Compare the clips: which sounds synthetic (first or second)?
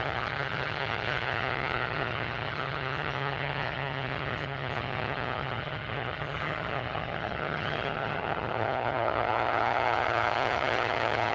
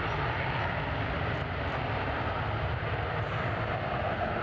first